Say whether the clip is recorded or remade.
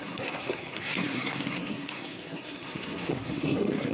remade